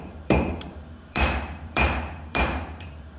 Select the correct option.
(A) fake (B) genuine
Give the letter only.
A